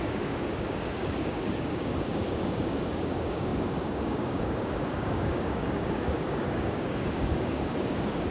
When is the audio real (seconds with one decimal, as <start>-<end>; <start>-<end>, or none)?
none